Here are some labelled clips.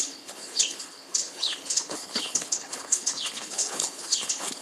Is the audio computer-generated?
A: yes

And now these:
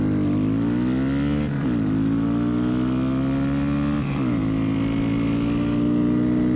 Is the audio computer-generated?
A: no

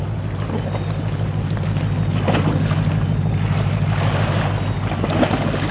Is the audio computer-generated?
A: no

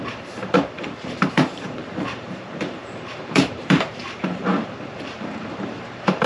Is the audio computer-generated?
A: yes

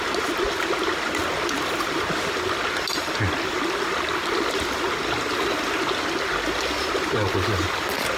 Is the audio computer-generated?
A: no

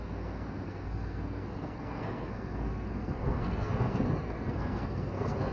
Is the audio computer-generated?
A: yes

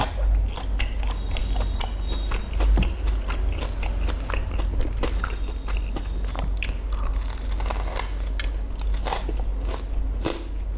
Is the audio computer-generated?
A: no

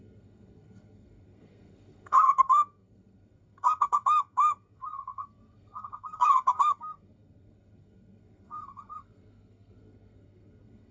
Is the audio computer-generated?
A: yes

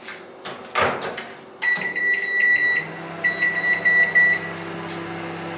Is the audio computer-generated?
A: no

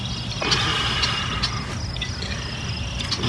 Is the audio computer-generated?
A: no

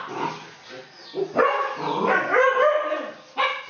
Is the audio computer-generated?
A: no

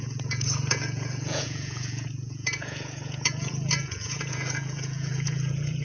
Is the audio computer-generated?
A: yes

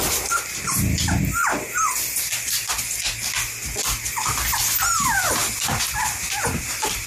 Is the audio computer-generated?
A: no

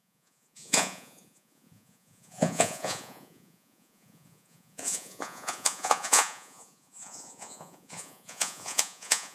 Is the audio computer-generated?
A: yes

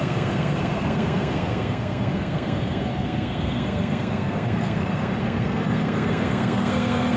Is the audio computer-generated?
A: yes